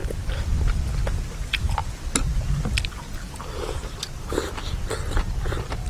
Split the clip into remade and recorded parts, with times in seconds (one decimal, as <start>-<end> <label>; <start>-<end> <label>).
0.0-5.9 recorded